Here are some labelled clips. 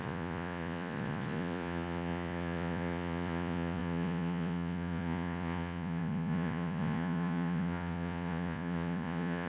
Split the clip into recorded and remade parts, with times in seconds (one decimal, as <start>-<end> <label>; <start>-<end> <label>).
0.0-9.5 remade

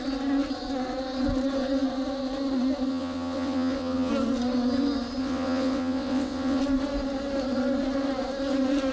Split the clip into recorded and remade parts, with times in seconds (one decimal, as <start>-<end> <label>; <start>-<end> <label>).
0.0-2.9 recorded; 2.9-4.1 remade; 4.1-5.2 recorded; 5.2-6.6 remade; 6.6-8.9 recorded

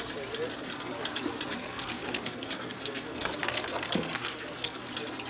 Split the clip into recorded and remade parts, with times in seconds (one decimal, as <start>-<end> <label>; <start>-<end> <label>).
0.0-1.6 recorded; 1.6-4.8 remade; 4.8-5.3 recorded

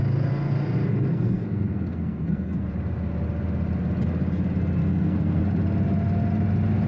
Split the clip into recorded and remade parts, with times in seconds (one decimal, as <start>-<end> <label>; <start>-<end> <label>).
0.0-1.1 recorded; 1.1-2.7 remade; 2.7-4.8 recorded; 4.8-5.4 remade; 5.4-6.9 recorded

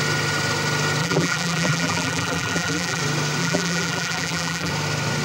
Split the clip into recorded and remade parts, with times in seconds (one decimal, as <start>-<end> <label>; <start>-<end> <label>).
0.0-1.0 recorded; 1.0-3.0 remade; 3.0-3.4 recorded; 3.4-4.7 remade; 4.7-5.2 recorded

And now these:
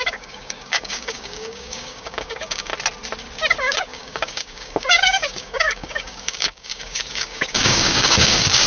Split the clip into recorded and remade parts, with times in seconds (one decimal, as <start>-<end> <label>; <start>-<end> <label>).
0.0-2.7 remade; 2.7-3.6 recorded; 3.6-8.7 remade